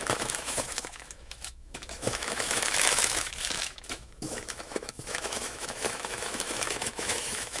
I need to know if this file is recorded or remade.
remade